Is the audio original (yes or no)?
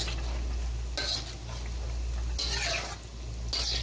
yes